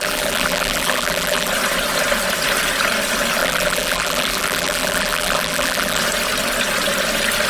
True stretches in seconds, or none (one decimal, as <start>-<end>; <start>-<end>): 1.5-3.4; 6.0-7.5